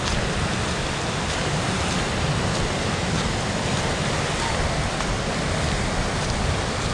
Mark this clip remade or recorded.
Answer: recorded